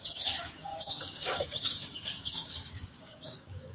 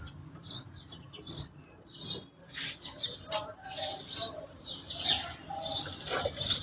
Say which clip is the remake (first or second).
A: first